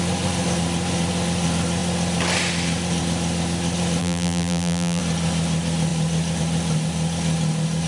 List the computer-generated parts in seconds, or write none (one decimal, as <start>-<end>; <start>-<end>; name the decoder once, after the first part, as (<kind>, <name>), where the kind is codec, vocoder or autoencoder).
4.0-5.0 (vocoder, BigVGAN v2)

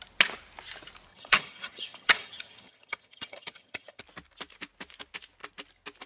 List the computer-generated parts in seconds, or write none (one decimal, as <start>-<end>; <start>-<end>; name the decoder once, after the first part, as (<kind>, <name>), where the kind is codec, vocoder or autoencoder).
1.1-4.0 (vocoder, HiFi-GAN)

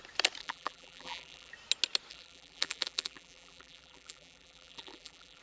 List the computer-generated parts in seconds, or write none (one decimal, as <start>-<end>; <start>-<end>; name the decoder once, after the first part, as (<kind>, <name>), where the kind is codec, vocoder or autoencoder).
0.4-1.5 (vocoder, BigVGAN v2); 2.1-5.4